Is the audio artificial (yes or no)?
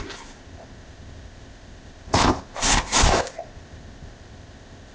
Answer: yes